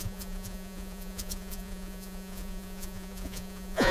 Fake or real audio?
fake